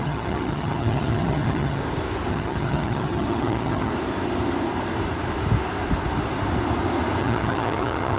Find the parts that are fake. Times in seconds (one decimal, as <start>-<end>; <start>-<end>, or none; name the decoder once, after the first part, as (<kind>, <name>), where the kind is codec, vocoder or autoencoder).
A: 0.0-1.8 (vocoder, HiFi-GAN); 2.3-3.9; 7.2-8.2